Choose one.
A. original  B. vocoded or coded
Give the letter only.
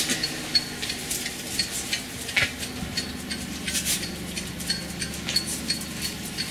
A